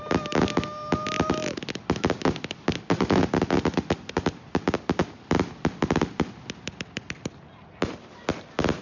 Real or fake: real